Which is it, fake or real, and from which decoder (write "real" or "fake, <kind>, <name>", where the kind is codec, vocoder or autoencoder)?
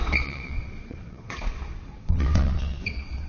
fake, vocoder, WaveNeXt